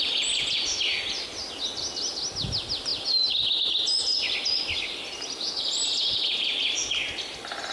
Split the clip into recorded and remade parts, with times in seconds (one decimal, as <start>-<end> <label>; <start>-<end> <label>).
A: 0.0-7.7 recorded